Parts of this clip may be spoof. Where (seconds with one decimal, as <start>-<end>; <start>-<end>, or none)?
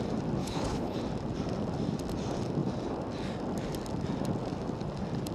0.4-1.0